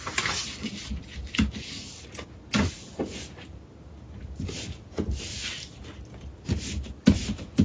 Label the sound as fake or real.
real